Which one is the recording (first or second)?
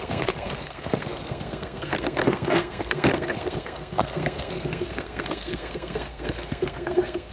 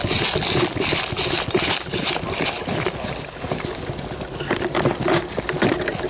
second